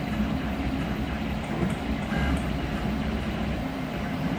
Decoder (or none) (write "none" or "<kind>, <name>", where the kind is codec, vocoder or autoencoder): vocoder, BigVGAN v2